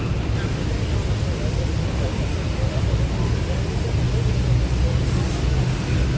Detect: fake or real real